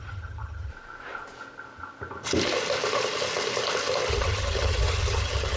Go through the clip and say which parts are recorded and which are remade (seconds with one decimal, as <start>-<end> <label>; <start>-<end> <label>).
0.0-0.7 remade; 0.7-4.1 recorded; 4.1-5.6 remade